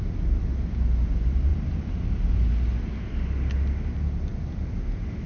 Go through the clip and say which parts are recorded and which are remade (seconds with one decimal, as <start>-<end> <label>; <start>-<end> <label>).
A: 0.0-1.5 recorded; 1.5-2.5 remade; 2.5-5.3 recorded